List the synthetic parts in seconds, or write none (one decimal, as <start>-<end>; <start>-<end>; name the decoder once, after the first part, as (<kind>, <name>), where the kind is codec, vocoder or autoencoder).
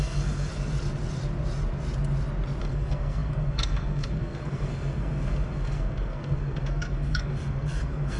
0.0-0.5 (codec, SNAC); 2.6-8.2